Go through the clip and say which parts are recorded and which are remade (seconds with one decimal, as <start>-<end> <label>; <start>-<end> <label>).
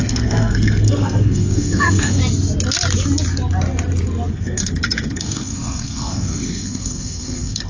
0.0-2.2 remade; 2.2-4.3 recorded; 4.3-7.7 remade